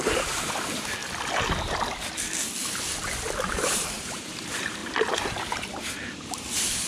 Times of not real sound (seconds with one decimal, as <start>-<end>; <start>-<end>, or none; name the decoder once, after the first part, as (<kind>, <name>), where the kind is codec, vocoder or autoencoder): 0.0-1.0 (vocoder, BigVGAN v2); 3.5-6.9